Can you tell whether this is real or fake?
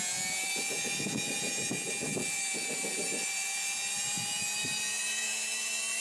fake